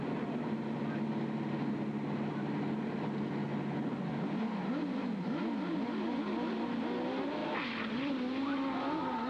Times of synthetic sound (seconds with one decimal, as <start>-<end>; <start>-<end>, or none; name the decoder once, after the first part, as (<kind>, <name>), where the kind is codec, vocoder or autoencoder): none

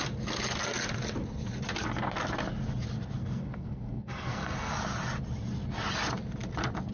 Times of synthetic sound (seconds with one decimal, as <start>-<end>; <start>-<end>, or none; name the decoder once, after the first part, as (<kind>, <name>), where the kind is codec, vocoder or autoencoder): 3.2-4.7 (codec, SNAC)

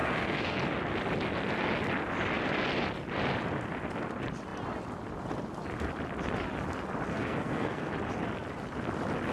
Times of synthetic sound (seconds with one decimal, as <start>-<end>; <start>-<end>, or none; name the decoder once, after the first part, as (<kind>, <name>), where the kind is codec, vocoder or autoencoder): 0.0-0.6 (codec, SNAC); 7.1-7.9

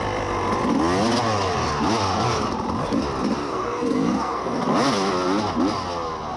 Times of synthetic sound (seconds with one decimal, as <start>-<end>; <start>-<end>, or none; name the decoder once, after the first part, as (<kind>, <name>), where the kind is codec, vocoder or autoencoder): 3.4-4.6 (codec, SNAC)